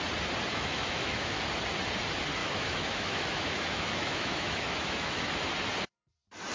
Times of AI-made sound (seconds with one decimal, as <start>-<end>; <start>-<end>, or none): 0.5-1.4; 2.4-5.3